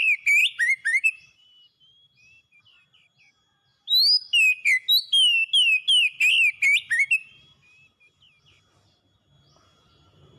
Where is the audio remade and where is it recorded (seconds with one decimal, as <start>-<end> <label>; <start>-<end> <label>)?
0.0-0.4 recorded; 0.4-2.6 remade; 2.6-10.4 recorded